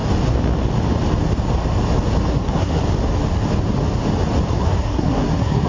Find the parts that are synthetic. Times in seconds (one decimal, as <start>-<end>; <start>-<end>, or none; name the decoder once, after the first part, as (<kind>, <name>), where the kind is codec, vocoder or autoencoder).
2.3-2.8 (codec, SNAC); 4.6-5.7